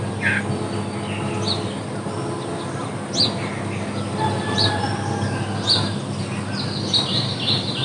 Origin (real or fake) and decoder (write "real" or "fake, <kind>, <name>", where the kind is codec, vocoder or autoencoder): real